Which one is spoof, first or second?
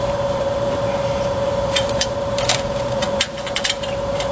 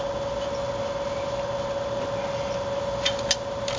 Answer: first